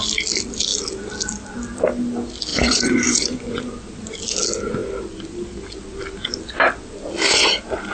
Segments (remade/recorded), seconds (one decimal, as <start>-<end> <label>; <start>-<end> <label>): 0.0-2.5 recorded; 2.5-3.7 remade; 3.7-7.9 recorded